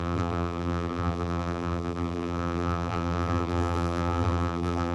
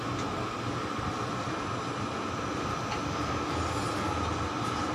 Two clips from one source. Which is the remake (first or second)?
first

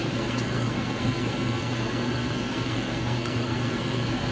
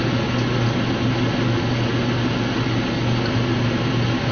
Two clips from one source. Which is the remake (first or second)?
first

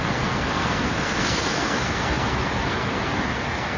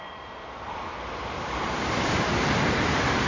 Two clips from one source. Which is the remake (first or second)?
first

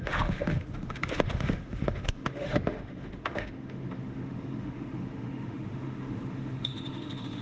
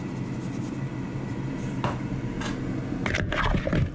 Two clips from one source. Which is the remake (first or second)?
first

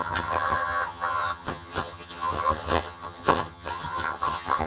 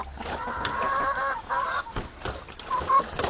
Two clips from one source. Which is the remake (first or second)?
first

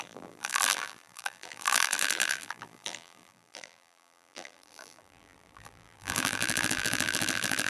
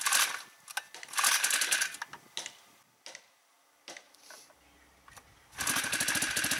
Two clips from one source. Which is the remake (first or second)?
first